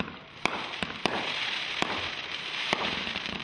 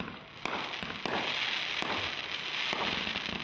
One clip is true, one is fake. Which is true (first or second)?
second